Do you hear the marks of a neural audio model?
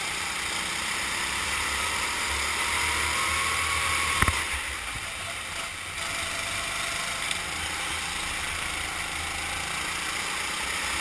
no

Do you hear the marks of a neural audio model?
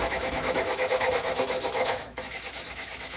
yes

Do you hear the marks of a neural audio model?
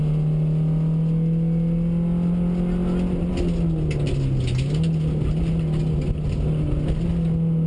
no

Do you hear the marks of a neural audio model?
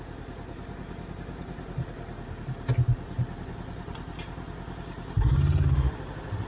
no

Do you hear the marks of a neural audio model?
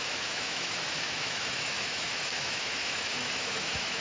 yes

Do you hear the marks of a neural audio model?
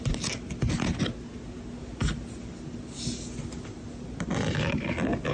no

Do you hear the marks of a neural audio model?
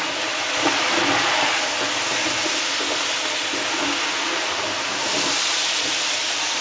no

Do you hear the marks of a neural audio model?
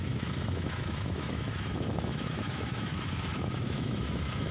yes